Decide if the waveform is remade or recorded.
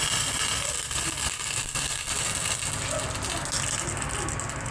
recorded